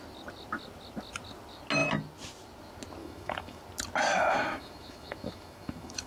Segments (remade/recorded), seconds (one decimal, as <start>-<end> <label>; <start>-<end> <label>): 0.0-3.0 recorded; 3.0-3.6 remade; 3.6-4.1 recorded; 4.1-6.1 remade